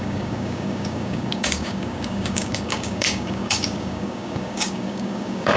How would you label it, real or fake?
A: fake